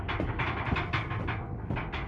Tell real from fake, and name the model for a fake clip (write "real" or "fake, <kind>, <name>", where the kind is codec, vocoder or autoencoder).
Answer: real